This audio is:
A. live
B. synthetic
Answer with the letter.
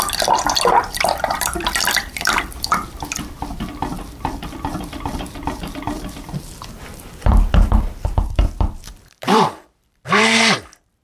B